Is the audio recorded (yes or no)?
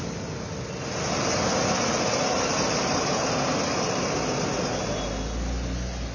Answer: yes